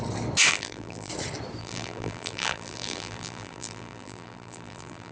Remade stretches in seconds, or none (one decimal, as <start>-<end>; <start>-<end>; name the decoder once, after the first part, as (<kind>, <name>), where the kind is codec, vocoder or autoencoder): 0.5-1.1 (vocoder, BigVGAN v2); 1.6-5.1